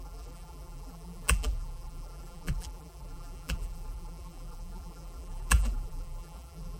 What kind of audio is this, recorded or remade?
remade